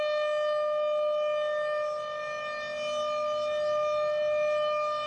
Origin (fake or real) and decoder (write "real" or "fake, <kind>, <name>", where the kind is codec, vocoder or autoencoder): real